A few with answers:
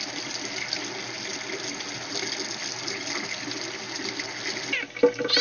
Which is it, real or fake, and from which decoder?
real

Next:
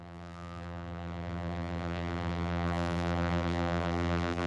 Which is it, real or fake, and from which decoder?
fake, vocoder, BigVGAN v2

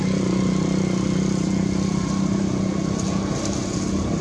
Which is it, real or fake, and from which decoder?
real